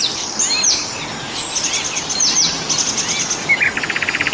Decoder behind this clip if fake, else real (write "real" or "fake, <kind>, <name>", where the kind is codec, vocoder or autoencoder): real